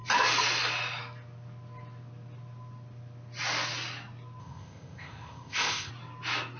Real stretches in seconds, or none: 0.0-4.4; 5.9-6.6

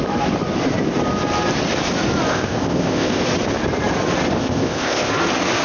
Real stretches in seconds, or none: 0.0-2.3; 3.2-4.4; 5.1-5.6